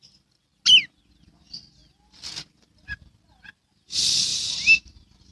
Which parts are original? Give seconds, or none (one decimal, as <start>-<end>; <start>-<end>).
0.0-5.3